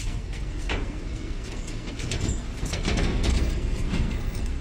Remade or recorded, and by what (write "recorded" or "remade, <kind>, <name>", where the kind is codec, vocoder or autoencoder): remade, codec, SNAC